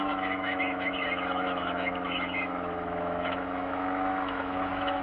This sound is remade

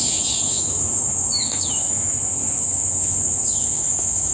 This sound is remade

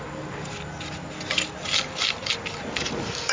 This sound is recorded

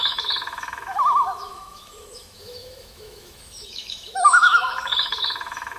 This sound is remade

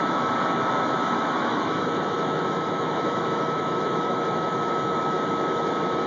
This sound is remade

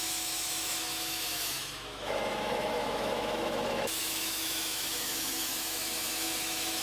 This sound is remade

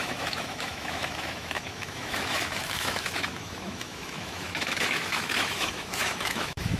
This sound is remade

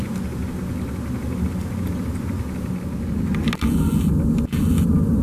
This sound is recorded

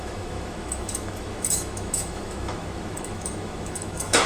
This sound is remade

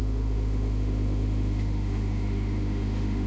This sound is remade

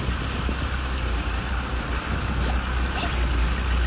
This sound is recorded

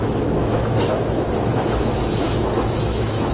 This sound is remade